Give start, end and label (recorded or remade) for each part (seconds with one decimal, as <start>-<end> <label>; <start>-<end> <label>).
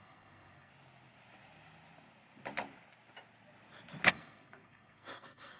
0.0-0.7 remade; 0.7-4.1 recorded; 4.1-5.6 remade